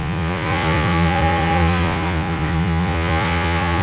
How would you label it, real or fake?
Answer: fake